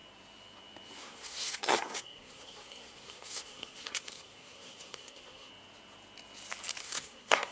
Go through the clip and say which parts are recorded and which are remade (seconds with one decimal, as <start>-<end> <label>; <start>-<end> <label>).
0.0-1.0 recorded; 1.0-5.5 remade; 5.5-6.8 recorded; 6.8-7.5 remade